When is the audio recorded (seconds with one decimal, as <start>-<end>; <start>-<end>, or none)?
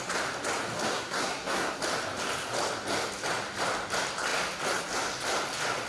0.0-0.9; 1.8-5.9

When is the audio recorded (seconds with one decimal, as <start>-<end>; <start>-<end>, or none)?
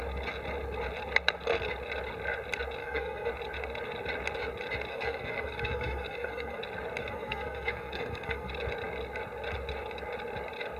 0.0-2.8; 3.3-4.9; 6.6-7.0; 8.5-10.8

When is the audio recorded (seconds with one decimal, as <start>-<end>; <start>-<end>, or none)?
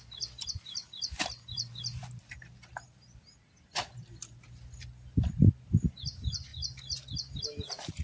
0.0-8.0